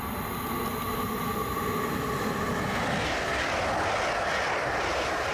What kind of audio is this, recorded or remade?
recorded